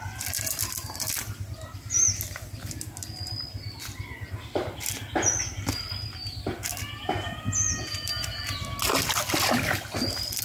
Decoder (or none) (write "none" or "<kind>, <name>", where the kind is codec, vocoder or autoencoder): none